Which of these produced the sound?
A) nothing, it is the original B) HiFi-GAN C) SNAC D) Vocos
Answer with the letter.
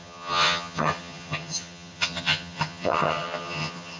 B